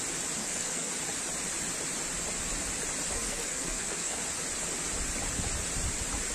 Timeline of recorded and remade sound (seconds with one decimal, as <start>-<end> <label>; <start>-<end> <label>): 0.0-0.4 recorded; 0.4-0.9 remade; 0.9-3.1 recorded; 3.1-4.2 remade; 4.2-6.3 recorded